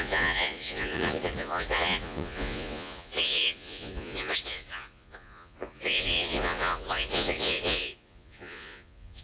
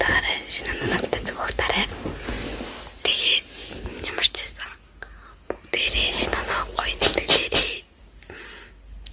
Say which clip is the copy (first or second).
first